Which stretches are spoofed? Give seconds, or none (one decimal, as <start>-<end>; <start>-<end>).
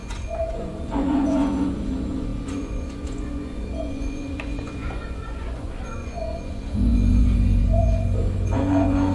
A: 0.0-9.1